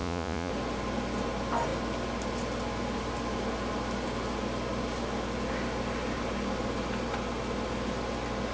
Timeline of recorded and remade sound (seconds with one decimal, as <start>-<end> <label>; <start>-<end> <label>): 0.0-0.5 remade; 0.5-8.5 recorded